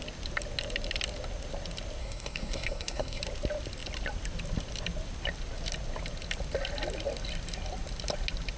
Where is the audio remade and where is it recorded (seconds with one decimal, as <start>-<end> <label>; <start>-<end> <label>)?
0.0-2.0 recorded; 2.0-3.2 remade; 3.2-8.6 recorded